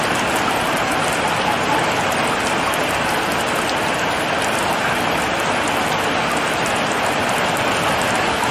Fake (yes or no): no